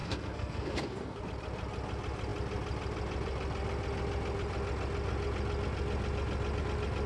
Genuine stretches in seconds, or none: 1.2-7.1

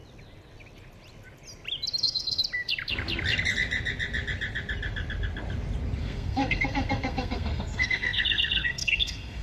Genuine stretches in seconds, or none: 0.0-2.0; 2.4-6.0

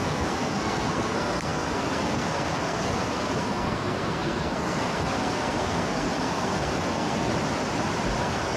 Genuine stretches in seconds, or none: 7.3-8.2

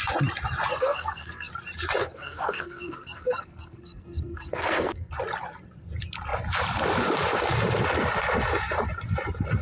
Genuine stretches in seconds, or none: 0.0-0.7; 1.5-2.0; 5.1-9.6

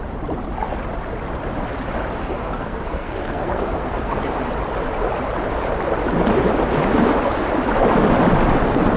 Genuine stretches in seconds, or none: 0.0-2.2; 4.2-9.0

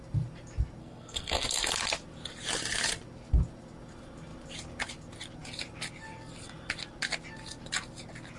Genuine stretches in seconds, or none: 0.0-0.8; 1.7-8.4